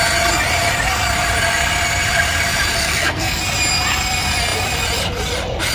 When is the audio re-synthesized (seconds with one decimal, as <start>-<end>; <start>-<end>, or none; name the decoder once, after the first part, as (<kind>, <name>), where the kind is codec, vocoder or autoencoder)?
2.8-3.4 (codec, SNAC)